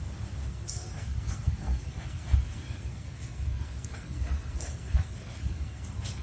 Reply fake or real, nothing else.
fake